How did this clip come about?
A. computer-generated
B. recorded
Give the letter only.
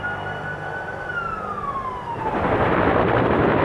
B